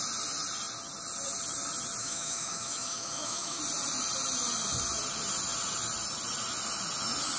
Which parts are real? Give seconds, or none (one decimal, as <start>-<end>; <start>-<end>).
0.0-2.0; 3.6-7.4